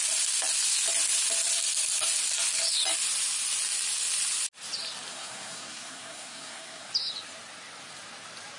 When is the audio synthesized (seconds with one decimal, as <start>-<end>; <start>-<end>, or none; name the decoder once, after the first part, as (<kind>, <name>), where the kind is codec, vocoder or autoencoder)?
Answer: 5.1-6.9 (codec, SNAC)